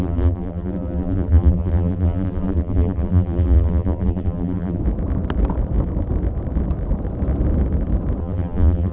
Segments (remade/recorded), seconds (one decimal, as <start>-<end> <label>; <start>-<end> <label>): 0.0-4.8 remade; 4.8-8.2 recorded; 8.2-8.9 remade